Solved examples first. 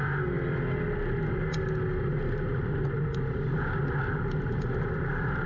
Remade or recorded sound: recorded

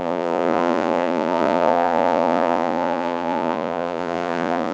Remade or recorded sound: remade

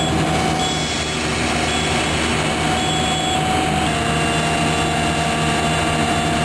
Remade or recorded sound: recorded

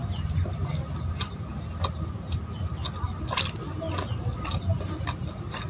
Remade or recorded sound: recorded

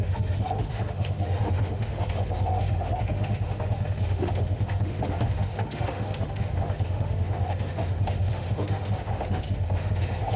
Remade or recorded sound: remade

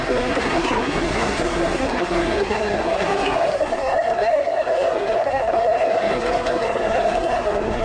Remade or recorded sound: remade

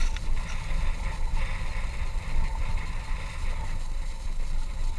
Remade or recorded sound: recorded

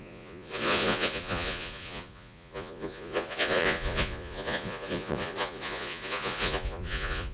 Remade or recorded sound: remade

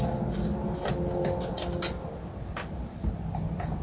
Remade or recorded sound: recorded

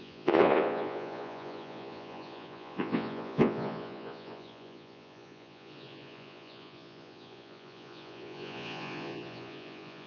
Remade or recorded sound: remade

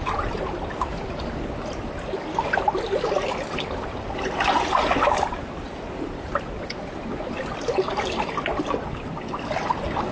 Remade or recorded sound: recorded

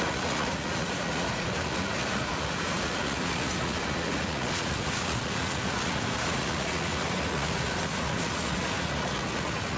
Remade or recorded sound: remade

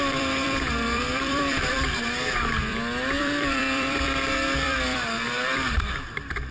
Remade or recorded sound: remade